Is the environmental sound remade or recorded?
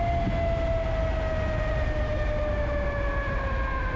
recorded